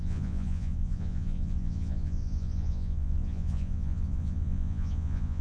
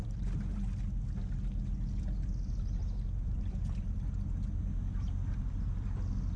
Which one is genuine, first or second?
second